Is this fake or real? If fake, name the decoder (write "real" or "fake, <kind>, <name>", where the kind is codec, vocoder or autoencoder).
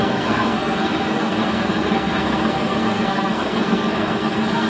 fake, codec, SNAC